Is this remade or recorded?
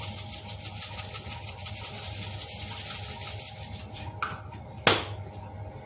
recorded